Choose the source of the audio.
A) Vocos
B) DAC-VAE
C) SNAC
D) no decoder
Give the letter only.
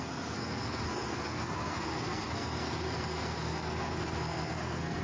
C